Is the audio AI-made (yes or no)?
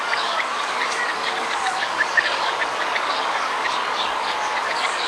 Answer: yes